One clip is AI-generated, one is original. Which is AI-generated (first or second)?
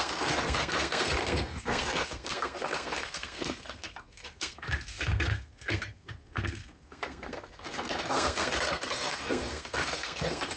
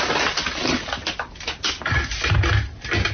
first